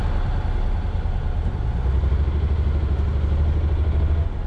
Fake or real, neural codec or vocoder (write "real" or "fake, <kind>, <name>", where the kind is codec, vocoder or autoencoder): real